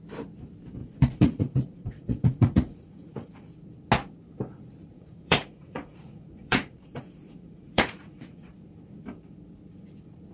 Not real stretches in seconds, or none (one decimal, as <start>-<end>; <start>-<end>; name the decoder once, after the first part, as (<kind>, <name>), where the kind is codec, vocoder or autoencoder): 0.8-3.5 (vocoder, Vocos); 4.9-8.5